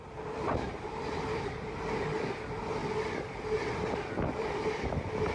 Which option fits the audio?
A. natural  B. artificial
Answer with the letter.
A